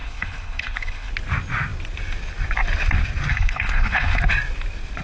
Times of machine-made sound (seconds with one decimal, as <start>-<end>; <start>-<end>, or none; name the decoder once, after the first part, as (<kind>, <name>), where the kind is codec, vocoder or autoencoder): 0.0-1.1 (codec, HILCodec); 3.3-4.2